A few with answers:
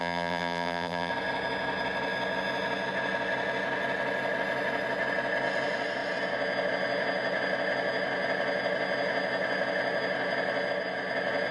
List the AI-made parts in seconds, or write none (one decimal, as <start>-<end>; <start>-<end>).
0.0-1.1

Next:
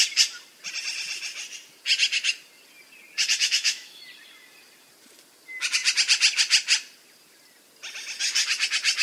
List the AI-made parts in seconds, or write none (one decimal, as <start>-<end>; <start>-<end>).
3.4-4.0

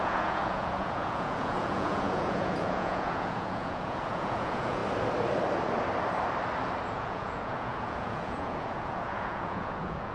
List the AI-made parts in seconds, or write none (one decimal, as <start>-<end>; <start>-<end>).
0.0-4.8; 6.9-10.1

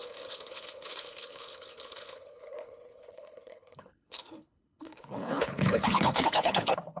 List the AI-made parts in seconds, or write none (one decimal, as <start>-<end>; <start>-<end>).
0.0-7.0

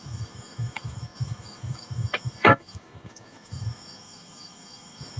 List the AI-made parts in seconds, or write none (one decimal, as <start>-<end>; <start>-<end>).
0.0-5.2

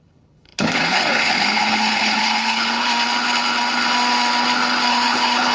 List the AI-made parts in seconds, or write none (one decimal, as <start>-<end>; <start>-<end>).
0.0-2.9; 4.9-5.5

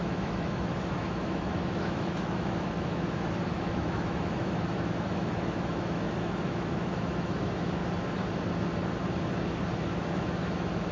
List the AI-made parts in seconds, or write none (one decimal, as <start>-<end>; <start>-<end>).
0.0-7.8; 9.8-10.9